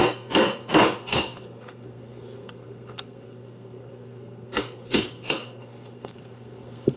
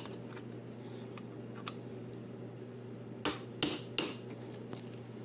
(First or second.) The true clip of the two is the second